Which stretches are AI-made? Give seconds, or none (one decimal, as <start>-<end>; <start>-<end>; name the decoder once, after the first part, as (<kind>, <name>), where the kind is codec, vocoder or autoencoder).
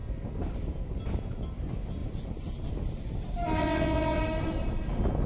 3.6-4.2 (vocoder, WaveNeXt)